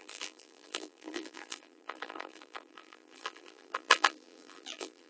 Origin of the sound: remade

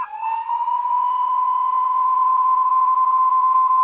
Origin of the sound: remade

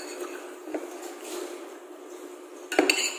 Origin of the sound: recorded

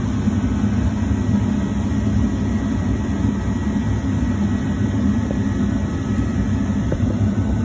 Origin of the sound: recorded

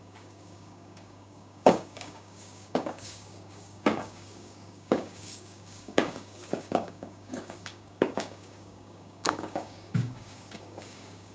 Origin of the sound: remade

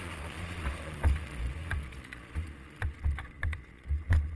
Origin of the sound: remade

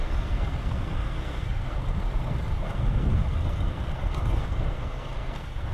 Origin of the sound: remade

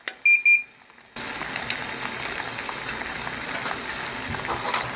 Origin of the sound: recorded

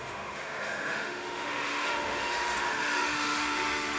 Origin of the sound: remade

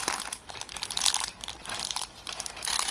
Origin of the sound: remade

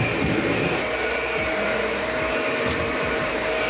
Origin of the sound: remade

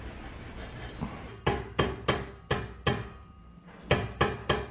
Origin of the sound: recorded